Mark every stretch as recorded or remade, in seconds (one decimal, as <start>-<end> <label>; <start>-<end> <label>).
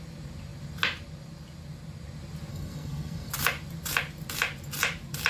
0.0-2.5 recorded; 2.5-3.3 remade; 3.3-5.3 recorded